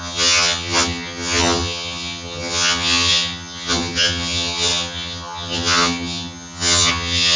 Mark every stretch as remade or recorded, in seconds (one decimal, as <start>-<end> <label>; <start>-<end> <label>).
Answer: 0.0-7.4 remade